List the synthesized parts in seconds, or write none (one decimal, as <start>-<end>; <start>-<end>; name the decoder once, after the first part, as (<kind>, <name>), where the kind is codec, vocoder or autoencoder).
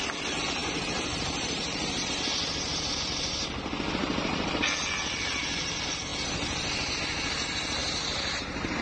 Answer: 0.6-2.1 (vocoder, BigVGAN v2); 4.0-4.6; 7.8-8.8